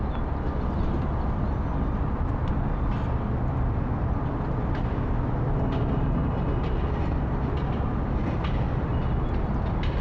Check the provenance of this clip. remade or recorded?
recorded